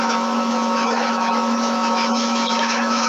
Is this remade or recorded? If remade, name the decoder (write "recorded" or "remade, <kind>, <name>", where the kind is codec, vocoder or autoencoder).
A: remade, autoencoder, DAC-VAE